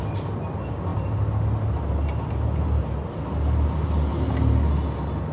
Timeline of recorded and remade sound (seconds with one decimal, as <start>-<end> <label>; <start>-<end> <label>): 0.0-5.3 recorded